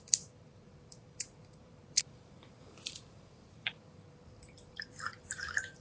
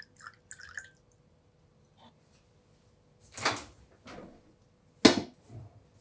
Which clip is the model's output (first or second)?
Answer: first